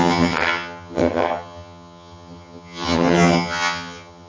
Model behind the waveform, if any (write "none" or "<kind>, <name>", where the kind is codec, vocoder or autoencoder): vocoder, HiFi-GAN